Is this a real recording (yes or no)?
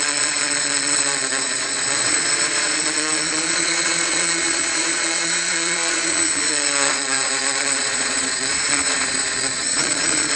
no